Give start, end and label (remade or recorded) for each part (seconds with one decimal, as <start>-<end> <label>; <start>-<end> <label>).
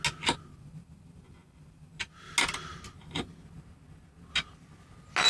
0.0-5.3 recorded